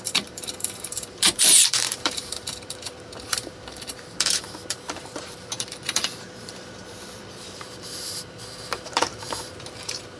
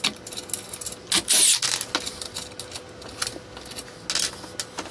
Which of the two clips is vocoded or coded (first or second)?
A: first